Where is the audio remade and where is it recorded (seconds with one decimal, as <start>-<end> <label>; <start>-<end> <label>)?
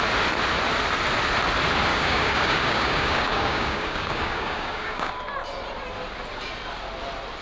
0.0-1.9 recorded; 1.9-5.1 remade; 5.1-7.4 recorded